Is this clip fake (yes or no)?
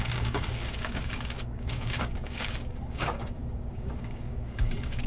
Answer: yes